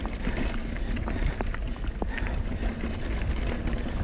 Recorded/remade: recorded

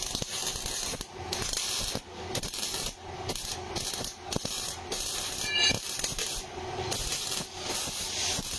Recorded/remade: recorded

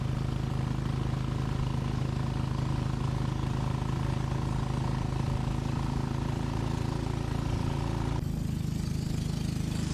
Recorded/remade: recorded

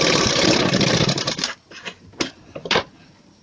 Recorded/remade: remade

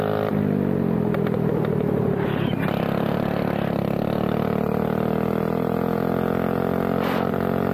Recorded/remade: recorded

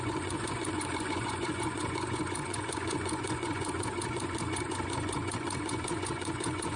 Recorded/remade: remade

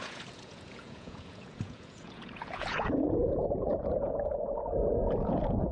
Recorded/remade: remade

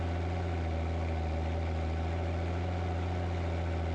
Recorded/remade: recorded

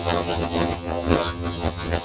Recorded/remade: remade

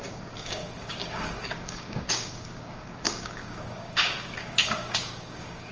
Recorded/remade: remade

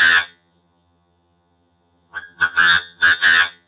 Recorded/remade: remade